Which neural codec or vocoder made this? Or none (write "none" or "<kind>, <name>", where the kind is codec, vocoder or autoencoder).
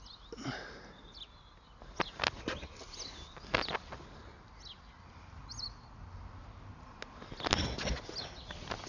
none